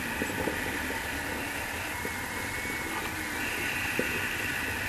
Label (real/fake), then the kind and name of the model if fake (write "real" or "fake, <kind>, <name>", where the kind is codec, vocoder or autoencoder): real